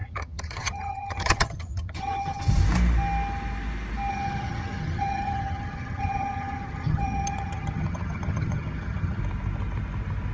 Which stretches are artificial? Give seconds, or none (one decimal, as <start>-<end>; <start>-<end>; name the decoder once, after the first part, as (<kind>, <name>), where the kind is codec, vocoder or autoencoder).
0.0-2.4 (vocoder, HiFi-GAN); 4.1-9.2